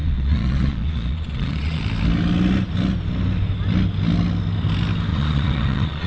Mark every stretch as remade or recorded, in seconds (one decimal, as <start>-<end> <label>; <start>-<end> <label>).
0.0-1.8 remade; 1.8-5.1 recorded; 5.1-6.1 remade